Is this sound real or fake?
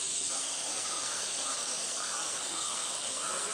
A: fake